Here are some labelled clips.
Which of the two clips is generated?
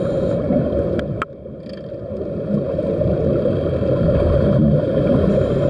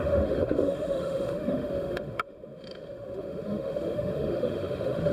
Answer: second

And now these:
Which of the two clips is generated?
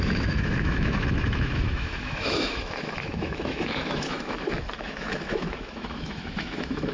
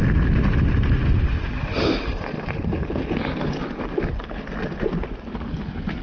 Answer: first